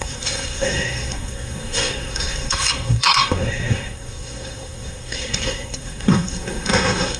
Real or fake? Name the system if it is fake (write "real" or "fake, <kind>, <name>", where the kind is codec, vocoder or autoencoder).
fake, codec, SNAC